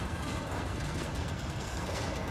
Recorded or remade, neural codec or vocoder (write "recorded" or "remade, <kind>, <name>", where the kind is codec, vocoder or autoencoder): remade, codec, SNAC